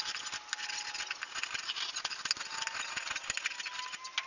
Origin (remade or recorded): recorded